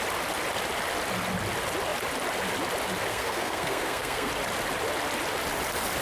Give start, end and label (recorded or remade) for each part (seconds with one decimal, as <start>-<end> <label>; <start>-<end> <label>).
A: 0.0-3.1 recorded; 3.1-4.3 remade; 4.3-6.0 recorded